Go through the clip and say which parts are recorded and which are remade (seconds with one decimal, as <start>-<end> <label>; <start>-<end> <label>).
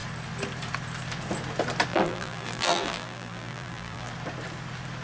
0.0-1.9 recorded; 1.9-4.1 remade; 4.1-5.0 recorded